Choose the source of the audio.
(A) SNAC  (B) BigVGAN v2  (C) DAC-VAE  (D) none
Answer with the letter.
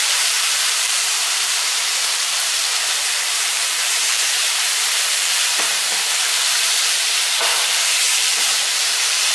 B